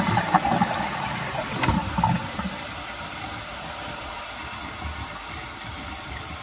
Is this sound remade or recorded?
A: recorded